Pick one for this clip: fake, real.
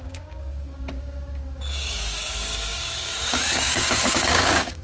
fake